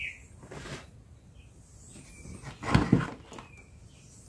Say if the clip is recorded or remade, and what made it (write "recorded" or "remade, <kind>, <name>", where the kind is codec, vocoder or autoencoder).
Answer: recorded